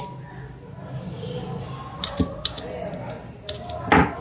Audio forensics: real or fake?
real